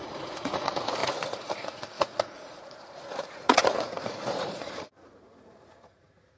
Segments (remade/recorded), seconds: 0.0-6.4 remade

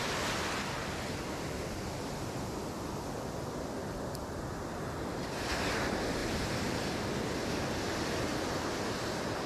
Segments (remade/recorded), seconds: 0.0-9.5 recorded

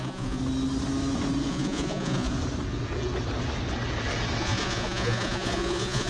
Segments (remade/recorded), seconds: 0.0-0.4 remade; 0.4-1.5 recorded; 1.5-2.3 remade; 2.3-4.4 recorded; 4.4-6.1 remade